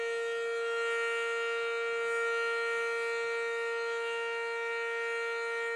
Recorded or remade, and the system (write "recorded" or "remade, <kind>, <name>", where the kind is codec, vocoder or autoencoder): recorded